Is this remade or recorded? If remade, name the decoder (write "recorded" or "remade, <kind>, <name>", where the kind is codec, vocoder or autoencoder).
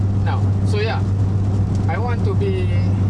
recorded